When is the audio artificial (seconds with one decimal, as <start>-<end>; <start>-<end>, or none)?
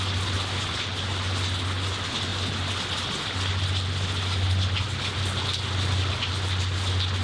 none